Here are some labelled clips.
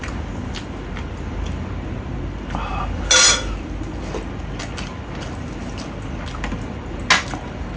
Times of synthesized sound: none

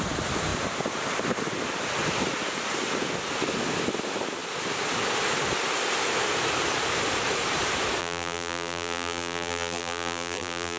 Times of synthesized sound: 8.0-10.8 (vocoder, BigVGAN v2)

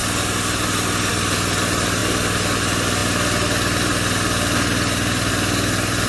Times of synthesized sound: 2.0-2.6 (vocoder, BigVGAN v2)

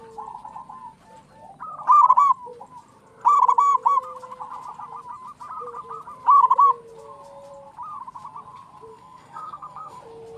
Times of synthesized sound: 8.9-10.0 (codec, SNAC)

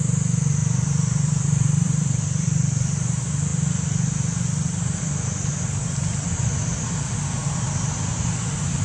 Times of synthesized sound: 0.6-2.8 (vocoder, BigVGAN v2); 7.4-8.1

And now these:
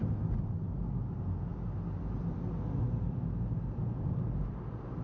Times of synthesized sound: none